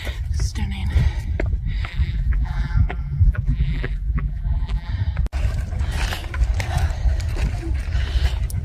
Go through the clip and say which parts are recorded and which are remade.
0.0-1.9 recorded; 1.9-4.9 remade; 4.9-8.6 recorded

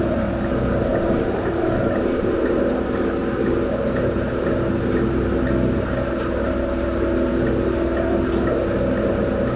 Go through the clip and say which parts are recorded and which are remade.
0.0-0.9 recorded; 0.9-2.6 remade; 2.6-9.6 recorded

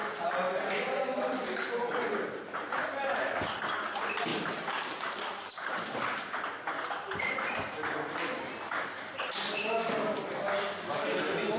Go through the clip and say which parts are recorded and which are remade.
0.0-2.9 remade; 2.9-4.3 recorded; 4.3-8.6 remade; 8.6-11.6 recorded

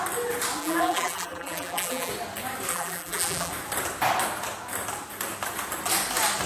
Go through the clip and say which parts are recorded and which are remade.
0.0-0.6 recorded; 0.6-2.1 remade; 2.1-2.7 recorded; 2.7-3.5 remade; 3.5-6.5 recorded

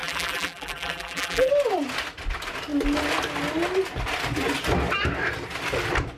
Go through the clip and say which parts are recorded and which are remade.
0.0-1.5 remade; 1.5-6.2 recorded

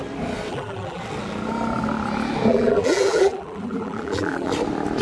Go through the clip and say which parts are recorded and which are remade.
0.0-0.5 recorded; 0.5-1.0 remade; 1.0-2.5 recorded; 2.5-4.5 remade; 4.5-5.0 recorded